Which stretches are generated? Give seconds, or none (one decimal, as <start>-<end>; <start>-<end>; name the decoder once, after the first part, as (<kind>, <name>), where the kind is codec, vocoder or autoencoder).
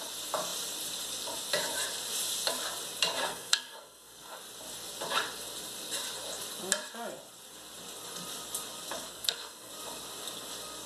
3.2-4.4 (codec, SNAC); 9.1-9.7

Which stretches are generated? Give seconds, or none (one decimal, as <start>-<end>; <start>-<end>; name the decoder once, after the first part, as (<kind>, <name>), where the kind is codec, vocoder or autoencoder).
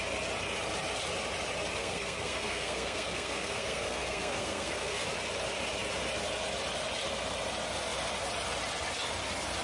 1.8-5.0 (codec, SNAC)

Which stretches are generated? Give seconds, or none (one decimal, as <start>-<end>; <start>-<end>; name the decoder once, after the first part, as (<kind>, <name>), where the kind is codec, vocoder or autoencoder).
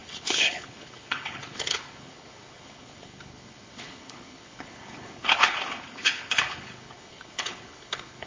0.0-8.3 (codec, HILCodec)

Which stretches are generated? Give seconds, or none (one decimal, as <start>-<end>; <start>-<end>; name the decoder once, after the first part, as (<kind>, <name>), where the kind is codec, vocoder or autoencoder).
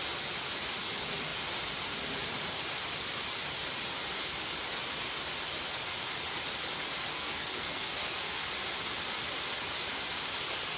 7.1-8.4 (codec, SNAC)